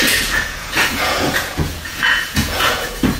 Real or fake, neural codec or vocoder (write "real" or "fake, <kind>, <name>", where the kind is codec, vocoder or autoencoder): fake, vocoder, Vocos